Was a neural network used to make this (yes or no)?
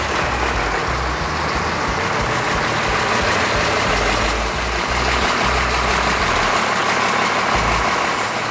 no